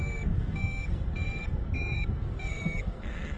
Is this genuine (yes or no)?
no